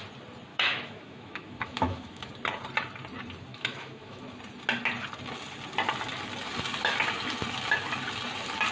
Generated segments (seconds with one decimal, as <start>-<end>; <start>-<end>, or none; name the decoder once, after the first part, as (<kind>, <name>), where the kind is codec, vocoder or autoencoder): 0.5-2.3 (autoencoder, DAC-VAE); 3.5-4.2